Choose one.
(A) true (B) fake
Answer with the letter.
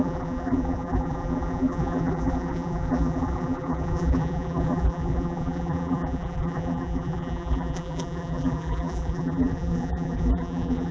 B